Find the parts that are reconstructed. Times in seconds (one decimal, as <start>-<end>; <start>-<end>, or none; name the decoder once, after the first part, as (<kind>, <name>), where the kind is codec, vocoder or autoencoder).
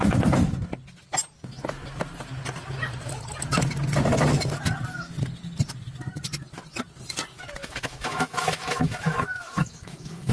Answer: 7.6-10.3 (autoencoder, DAC-VAE)